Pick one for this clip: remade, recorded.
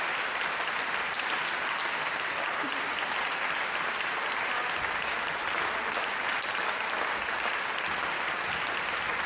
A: remade